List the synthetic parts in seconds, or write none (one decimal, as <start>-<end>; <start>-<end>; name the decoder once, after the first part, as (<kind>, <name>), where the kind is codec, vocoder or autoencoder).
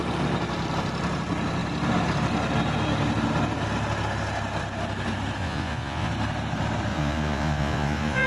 5.4-6.1 (vocoder, Vocos); 6.9-8.3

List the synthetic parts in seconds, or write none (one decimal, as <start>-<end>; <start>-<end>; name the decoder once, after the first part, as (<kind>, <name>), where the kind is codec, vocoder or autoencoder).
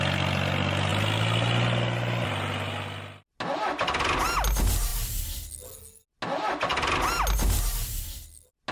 none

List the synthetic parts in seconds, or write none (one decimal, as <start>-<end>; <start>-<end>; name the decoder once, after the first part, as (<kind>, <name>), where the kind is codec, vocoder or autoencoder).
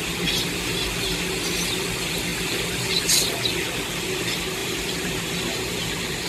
4.6-5.4 (vocoder, BigVGAN v2)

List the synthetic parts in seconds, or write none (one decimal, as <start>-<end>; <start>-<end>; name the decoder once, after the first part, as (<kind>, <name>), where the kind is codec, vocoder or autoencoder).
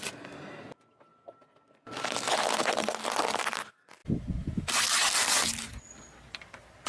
none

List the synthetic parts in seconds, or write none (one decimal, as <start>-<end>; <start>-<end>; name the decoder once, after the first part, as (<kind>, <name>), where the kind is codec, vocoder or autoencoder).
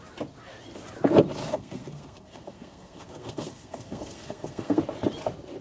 1.4-4.8 (codec, SNAC)